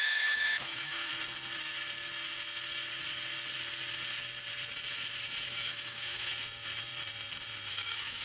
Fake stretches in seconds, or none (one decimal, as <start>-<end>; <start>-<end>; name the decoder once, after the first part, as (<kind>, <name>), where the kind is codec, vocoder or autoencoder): 0.0-1.1 (autoencoder, DAC-VAE); 5.5-6.3; 7.7-8.2